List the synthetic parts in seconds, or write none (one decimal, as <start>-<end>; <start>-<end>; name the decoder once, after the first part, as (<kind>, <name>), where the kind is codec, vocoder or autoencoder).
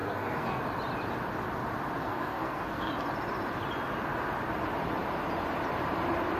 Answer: 0.0-0.6 (codec, SNAC); 2.0-2.9